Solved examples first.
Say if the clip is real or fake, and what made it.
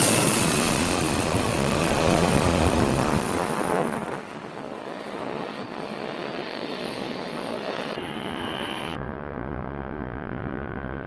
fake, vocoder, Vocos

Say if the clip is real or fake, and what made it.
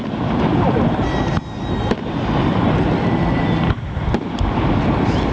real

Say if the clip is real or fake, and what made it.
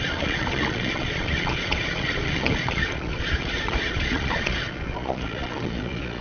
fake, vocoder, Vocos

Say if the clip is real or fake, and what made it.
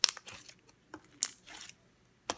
real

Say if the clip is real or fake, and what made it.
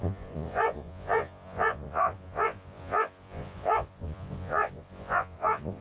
fake, vocoder, Vocos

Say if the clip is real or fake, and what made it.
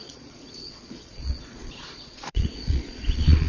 fake, vocoder, Vocos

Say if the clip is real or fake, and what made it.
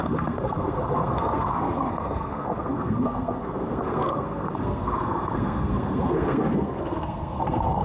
fake, codec, SNAC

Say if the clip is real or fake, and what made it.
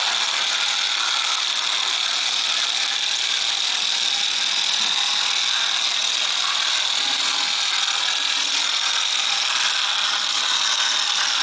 real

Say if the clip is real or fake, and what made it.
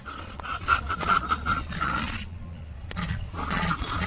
fake, vocoder, Vocos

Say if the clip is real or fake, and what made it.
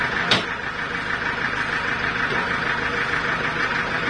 real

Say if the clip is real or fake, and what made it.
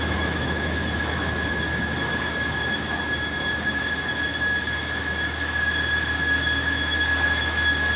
fake, autoencoder, DAC-VAE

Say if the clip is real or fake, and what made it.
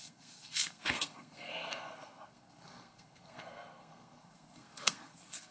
fake, codec, SNAC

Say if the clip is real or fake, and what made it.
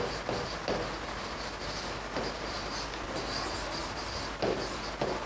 real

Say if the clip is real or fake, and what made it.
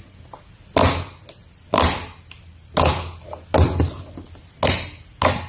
real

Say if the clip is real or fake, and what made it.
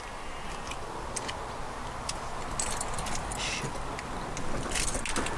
real